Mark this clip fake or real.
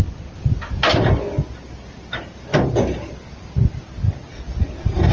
real